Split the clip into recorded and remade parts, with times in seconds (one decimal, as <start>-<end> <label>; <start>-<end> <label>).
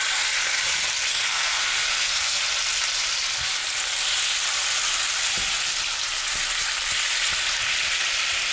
0.0-1.1 recorded; 1.1-2.4 remade; 2.4-8.5 recorded